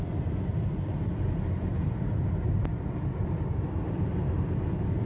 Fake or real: real